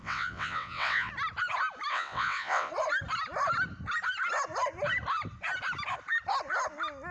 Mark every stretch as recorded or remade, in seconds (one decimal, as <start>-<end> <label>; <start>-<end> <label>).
0.0-1.1 remade; 1.1-1.9 recorded; 1.9-2.7 remade; 2.7-7.1 recorded